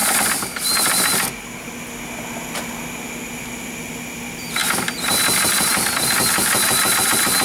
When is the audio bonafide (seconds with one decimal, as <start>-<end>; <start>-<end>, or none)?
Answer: 0.0-7.4